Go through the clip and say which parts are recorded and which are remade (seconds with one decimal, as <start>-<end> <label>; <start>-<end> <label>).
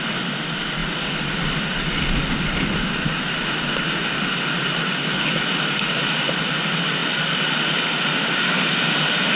0.0-9.4 recorded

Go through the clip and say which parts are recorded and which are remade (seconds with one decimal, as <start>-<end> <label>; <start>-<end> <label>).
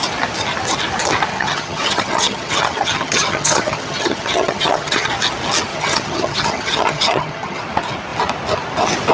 0.0-1.3 recorded; 1.3-5.1 remade; 5.1-5.7 recorded; 5.7-7.6 remade; 7.6-9.1 recorded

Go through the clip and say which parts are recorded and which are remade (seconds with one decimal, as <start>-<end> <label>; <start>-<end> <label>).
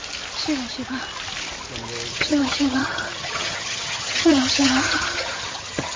0.0-2.1 recorded; 2.1-6.0 remade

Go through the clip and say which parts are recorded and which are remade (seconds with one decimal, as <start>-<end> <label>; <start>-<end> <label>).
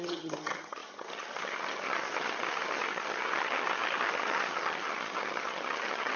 0.0-6.2 remade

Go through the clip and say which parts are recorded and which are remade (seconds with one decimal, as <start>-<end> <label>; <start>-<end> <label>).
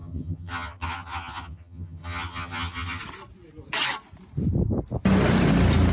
0.0-3.0 remade; 3.0-5.9 recorded